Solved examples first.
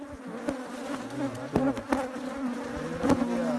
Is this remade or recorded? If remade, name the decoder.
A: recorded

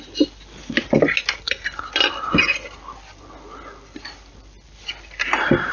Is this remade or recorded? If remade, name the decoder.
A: recorded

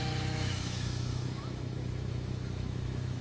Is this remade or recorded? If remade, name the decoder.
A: remade, autoencoder, DAC-VAE